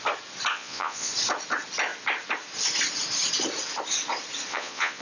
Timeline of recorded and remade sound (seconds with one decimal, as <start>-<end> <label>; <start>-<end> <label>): 0.0-0.5 recorded; 0.5-1.1 remade; 1.1-4.5 recorded; 4.5-5.0 remade